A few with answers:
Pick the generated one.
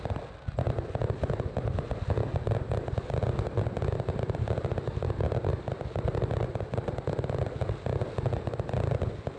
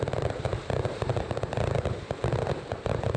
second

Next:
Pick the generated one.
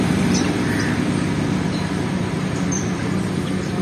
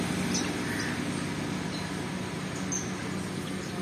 first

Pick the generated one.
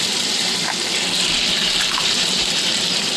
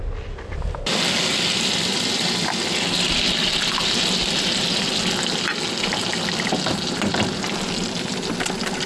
first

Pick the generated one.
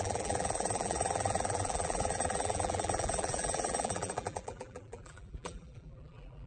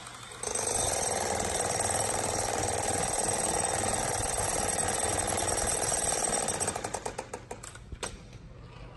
first